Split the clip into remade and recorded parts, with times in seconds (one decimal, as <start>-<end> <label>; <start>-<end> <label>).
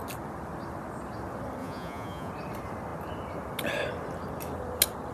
0.0-1.6 recorded; 1.6-2.3 remade; 2.3-5.1 recorded